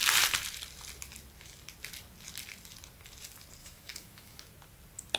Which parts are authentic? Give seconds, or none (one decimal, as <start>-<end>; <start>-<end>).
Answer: 0.0-3.6; 4.4-5.2